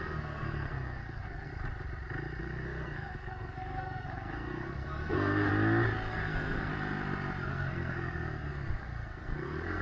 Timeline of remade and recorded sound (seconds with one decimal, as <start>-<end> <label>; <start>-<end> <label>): 0.0-1.5 remade; 1.5-2.4 recorded; 2.4-5.5 remade; 5.5-6.1 recorded; 6.1-6.7 remade; 6.7-7.5 recorded; 7.5-9.8 remade